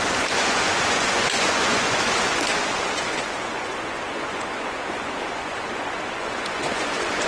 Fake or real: fake